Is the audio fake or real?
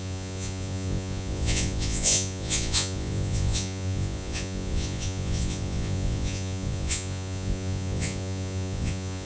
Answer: fake